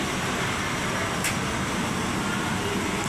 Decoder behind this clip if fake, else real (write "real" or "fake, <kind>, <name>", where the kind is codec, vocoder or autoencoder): real